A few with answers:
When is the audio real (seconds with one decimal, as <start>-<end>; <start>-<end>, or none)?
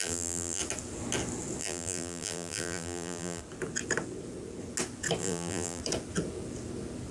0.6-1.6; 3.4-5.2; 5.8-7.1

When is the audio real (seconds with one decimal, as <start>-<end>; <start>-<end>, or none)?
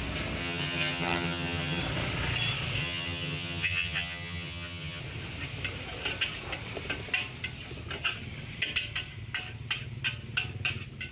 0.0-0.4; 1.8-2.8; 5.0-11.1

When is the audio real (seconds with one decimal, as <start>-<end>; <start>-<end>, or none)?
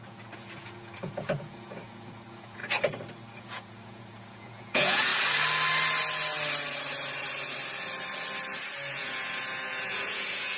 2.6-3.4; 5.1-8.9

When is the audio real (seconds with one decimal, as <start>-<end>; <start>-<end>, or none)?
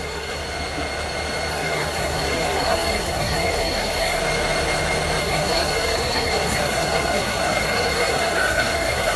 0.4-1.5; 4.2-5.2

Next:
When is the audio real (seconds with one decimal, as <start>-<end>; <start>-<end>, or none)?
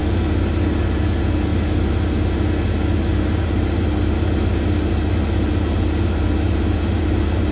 0.0-7.5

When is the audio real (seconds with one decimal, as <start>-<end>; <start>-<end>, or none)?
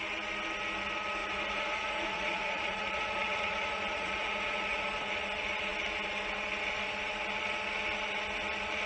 0.0-1.2; 4.8-8.9